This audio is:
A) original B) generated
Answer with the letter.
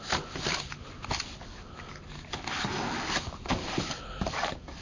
A